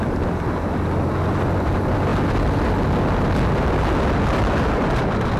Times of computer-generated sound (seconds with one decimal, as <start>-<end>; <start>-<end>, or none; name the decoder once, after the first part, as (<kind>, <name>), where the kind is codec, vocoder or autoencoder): none